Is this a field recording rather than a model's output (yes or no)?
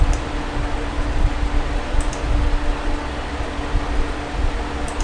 yes